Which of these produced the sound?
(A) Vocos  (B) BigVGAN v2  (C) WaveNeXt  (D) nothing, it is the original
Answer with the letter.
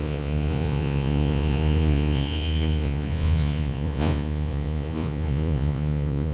A